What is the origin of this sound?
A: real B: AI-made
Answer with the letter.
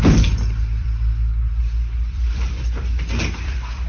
B